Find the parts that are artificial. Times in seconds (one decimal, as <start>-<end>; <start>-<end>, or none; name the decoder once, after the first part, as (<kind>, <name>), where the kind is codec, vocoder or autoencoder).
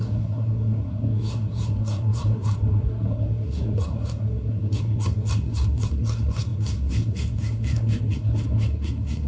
0.0-9.3 (codec, SNAC)